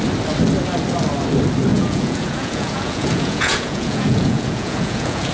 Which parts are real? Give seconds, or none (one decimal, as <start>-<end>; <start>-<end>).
0.0-1.7